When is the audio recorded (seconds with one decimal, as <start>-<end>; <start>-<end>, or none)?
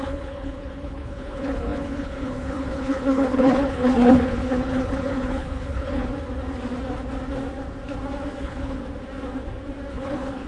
6.1-8.4; 8.8-9.9